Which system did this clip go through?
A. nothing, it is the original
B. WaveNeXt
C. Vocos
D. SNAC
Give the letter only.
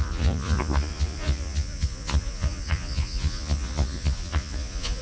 C